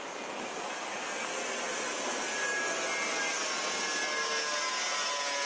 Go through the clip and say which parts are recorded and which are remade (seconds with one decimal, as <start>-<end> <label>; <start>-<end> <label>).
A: 0.0-5.5 recorded